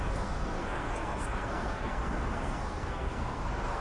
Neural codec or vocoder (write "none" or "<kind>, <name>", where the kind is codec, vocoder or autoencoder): codec, SNAC